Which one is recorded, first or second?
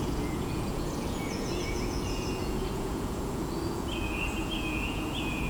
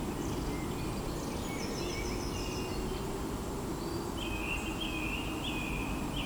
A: second